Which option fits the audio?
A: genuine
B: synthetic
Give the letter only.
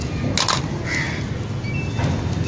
A